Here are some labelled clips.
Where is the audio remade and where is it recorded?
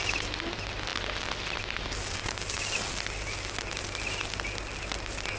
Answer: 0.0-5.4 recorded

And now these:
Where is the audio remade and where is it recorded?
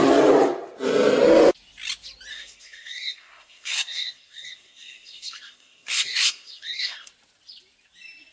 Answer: 0.0-2.3 recorded; 2.3-7.1 remade; 7.1-8.3 recorded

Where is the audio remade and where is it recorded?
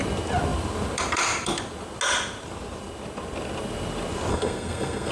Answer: 0.0-4.3 recorded; 4.3-5.1 remade